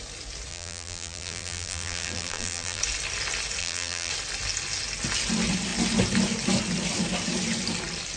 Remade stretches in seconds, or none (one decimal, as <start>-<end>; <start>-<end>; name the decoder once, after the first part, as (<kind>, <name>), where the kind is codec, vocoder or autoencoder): 0.5-2.8 (vocoder, BigVGAN v2); 3.6-4.1